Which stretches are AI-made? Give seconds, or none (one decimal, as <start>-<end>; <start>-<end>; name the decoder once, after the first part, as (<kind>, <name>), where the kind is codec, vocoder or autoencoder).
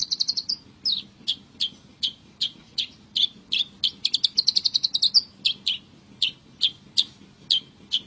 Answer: 0.0-0.5 (vocoder, Vocos); 1.9-3.5